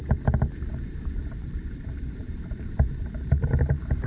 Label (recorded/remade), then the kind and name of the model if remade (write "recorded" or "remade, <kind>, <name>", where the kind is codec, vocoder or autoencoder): remade, vocoder, BigVGAN v2